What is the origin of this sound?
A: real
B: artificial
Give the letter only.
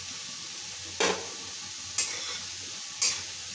A